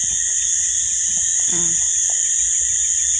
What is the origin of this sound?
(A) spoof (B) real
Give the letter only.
B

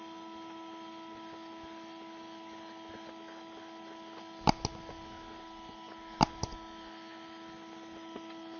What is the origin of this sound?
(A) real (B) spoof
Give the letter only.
A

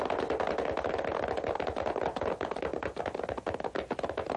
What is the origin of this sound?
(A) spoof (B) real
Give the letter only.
B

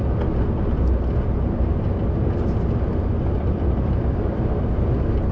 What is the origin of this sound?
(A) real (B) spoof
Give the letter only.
A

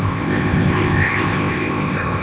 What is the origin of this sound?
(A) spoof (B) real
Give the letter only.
A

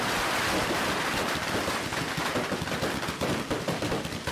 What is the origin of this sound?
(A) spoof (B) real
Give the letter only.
B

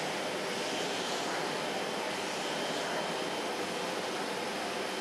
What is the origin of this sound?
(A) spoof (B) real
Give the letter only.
B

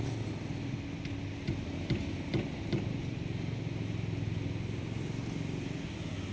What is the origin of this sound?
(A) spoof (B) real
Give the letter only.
B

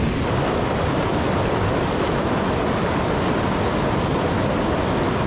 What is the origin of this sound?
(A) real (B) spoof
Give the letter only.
A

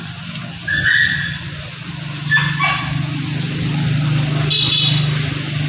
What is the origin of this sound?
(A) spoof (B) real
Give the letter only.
B